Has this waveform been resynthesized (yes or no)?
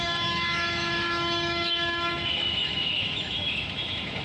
yes